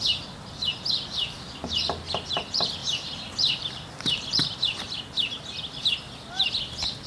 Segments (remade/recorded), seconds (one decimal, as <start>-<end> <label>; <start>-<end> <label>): 0.0-2.8 recorded; 2.8-5.0 remade; 5.0-7.1 recorded